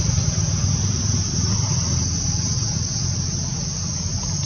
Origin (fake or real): real